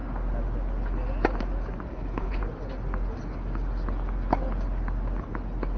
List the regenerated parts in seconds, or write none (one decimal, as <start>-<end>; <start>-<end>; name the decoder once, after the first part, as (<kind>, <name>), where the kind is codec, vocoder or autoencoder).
1.9-2.4 (codec, HILCodec)